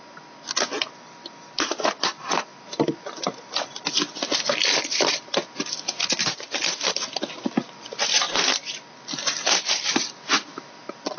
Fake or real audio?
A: fake